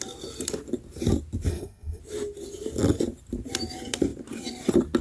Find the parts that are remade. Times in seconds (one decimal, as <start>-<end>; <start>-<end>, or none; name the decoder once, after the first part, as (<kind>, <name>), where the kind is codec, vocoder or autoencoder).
1.5-2.0 (codec, SNAC)